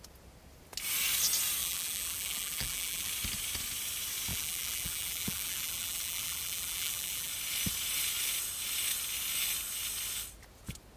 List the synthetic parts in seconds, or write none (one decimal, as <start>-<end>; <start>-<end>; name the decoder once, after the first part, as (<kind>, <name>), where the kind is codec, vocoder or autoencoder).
1.6-3.1 (vocoder, BigVGAN v2); 4.3-7.3